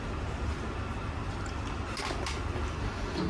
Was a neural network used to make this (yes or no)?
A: no